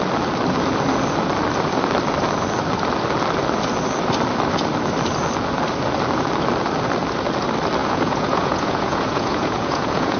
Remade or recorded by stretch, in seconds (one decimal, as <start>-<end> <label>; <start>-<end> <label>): 0.0-7.8 recorded; 7.8-10.2 remade